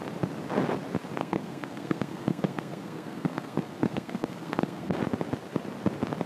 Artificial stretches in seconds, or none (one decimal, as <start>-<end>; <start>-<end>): 1.2-5.0